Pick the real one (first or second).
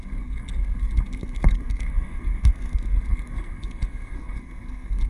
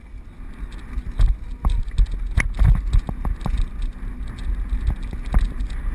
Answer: second